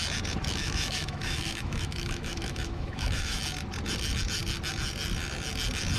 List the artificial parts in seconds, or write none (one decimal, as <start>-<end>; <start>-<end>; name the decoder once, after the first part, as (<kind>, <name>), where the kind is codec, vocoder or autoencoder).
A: 0.6-3.4 (autoencoder, DAC-VAE)